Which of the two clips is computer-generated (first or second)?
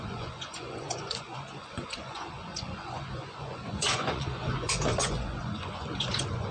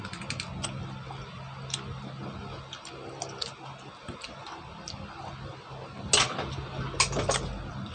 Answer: first